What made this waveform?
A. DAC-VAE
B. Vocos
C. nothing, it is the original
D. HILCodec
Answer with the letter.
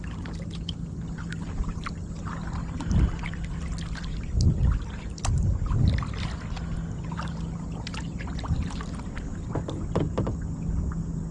C